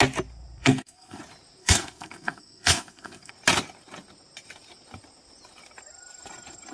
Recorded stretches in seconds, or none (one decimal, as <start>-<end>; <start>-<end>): 0.0-0.6; 1.2-1.6; 3.3-6.7